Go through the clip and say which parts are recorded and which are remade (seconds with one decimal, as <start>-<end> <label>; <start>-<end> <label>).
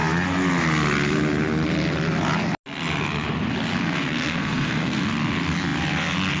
0.0-3.7 recorded; 3.7-5.0 remade; 5.0-6.4 recorded